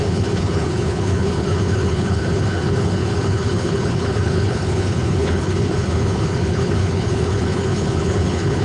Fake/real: fake